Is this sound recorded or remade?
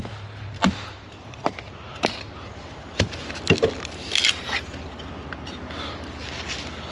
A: recorded